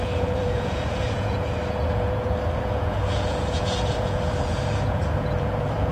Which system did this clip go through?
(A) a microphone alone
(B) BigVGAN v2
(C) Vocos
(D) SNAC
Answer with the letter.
C